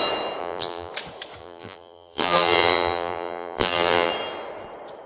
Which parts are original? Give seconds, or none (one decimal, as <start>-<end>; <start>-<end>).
0.0-0.4; 0.9-1.4; 4.1-5.1